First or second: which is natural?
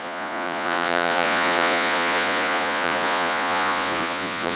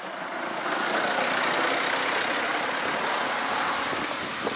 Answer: second